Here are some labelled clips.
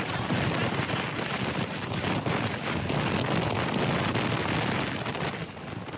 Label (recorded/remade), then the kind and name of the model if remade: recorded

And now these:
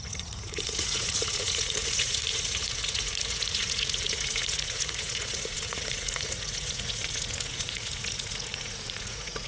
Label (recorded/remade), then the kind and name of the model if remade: remade, vocoder, Vocos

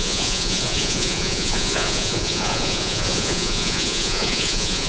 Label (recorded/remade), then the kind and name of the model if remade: remade, vocoder, Vocos